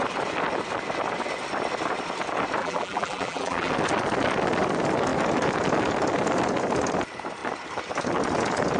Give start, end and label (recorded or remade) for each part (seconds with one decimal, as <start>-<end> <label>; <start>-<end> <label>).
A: 0.0-2.6 recorded; 2.6-3.7 remade; 3.7-8.8 recorded